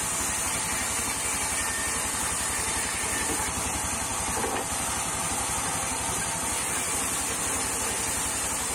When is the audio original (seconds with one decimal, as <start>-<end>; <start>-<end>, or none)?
0.0-8.7